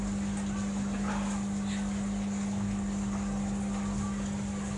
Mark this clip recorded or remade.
recorded